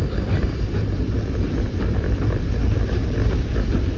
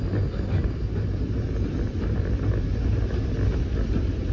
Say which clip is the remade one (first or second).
first